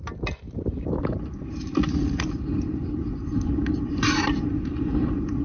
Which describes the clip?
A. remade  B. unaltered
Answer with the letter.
B